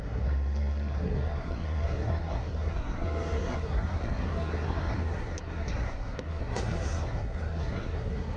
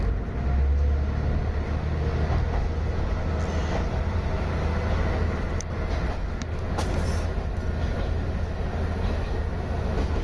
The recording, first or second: second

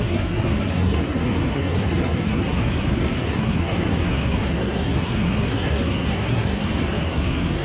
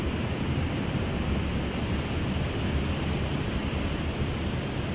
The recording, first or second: second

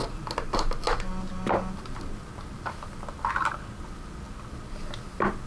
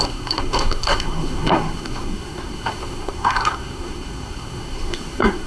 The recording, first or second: first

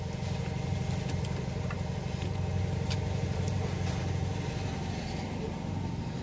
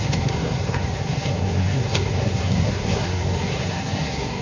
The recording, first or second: first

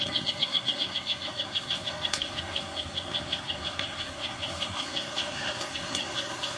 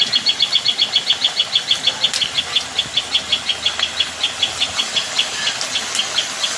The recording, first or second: second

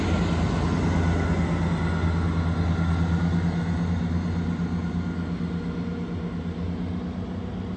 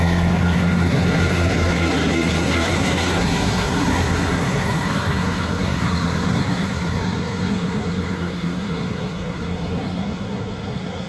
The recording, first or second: first